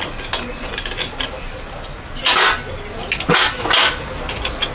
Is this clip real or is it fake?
real